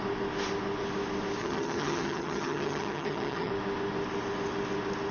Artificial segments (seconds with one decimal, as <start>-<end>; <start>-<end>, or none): 1.4-3.5